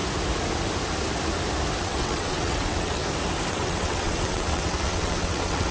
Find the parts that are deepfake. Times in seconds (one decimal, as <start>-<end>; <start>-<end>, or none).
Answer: 1.8-3.0; 3.5-5.7